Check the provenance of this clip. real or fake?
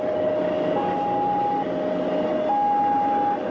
real